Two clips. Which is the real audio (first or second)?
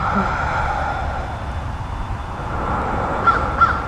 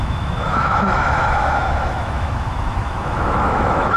first